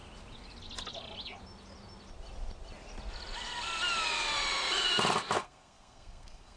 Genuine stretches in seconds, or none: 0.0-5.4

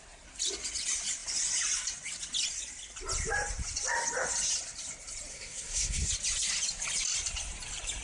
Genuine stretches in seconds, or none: 0.0-5.3; 6.1-8.0

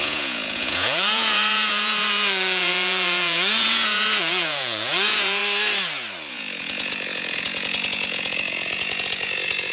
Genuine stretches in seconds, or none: 5.4-6.3

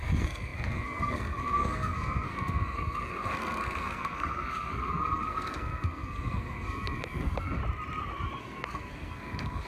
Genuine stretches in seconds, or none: 7.6-8.4

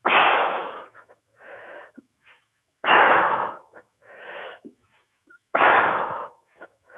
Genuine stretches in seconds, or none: none